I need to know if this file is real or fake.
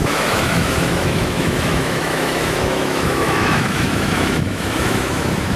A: fake